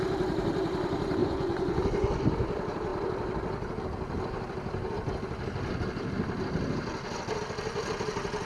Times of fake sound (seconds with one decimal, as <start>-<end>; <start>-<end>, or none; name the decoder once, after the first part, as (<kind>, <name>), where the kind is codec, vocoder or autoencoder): 1.2-1.8 (vocoder, Vocos)